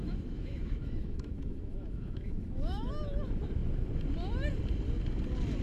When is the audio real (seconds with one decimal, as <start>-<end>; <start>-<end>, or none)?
2.9-5.6